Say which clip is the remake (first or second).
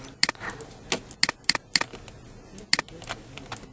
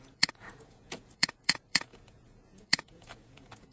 second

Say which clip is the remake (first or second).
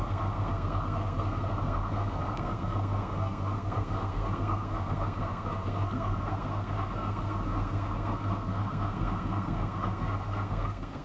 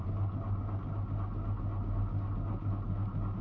first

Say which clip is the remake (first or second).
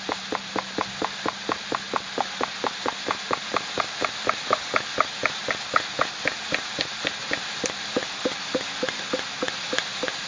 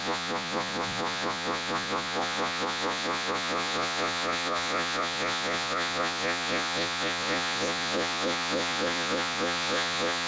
second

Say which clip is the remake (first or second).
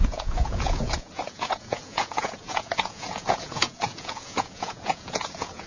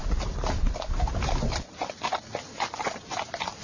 first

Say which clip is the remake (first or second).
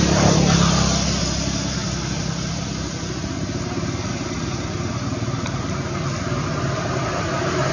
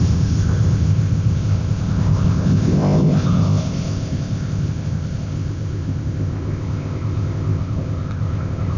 second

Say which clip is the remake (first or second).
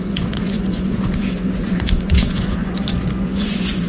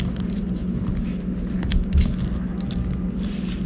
first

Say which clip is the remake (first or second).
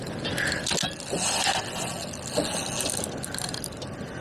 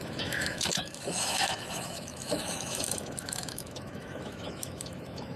second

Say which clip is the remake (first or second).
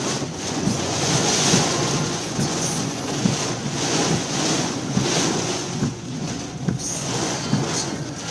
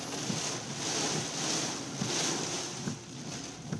first